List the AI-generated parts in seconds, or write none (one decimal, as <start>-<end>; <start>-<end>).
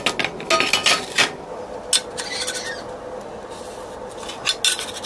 none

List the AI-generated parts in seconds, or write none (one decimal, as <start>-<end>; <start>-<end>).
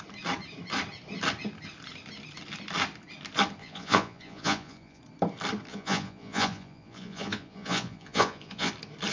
3.6-5.0; 5.7-8.7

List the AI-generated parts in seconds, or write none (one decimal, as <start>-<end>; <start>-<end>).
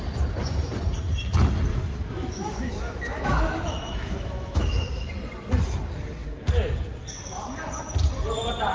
1.7-5.1